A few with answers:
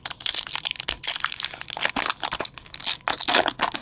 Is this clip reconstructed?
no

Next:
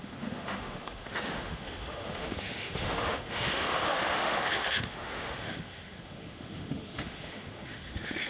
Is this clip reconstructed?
yes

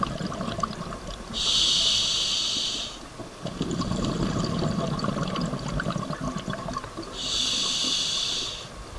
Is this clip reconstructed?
no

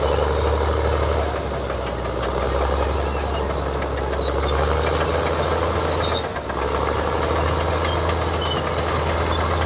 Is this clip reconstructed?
no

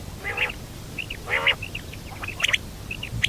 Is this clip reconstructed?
no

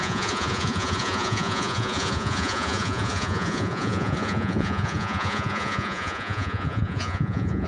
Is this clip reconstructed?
yes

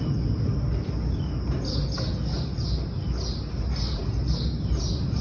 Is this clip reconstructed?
no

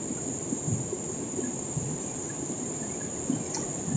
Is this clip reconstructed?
no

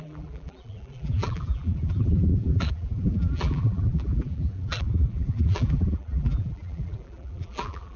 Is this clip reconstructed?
yes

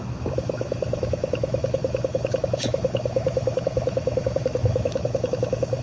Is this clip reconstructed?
yes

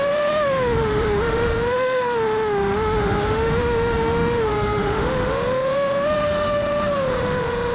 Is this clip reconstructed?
yes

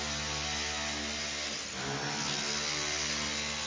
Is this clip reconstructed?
no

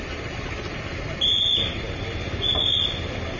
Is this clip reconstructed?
no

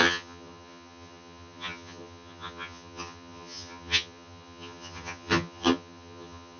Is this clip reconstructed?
yes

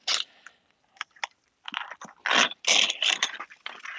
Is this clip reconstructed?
no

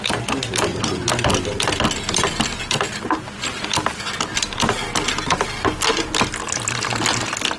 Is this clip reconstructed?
no